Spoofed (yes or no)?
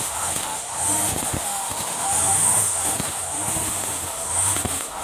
yes